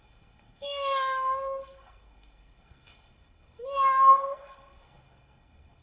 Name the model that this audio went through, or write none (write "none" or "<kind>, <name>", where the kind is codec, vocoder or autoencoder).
codec, SNAC